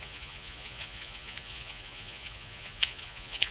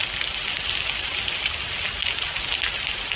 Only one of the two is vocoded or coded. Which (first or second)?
first